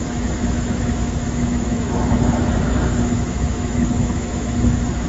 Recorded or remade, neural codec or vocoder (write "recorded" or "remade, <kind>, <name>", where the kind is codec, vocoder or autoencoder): remade, autoencoder, DAC-VAE